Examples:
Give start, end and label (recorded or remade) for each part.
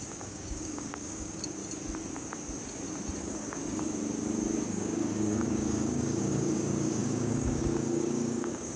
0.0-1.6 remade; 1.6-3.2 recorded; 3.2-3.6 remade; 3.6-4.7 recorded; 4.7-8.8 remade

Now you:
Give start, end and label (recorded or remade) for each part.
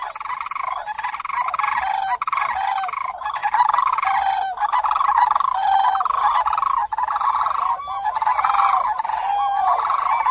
0.0-10.3 recorded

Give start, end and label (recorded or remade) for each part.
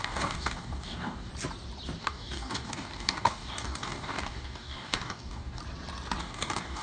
0.0-1.3 remade; 1.3-2.0 recorded; 2.0-5.6 remade; 5.6-6.2 recorded; 6.2-6.8 remade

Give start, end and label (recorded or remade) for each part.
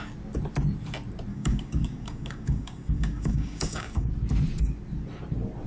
0.0-1.3 recorded; 1.3-4.1 remade; 4.1-5.7 recorded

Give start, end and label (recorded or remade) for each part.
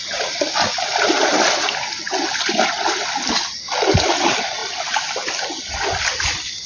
0.0-6.7 recorded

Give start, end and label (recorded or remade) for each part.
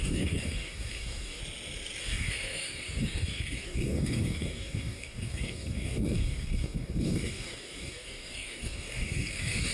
0.0-1.4 remade; 1.4-2.0 recorded; 2.0-9.7 remade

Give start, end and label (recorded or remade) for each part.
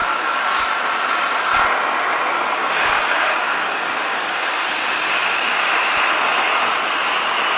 0.0-0.6 remade; 0.6-2.6 recorded; 2.6-5.5 remade; 5.5-7.6 recorded